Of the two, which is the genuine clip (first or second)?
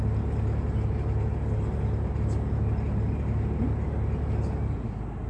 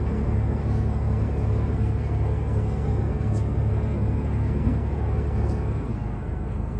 first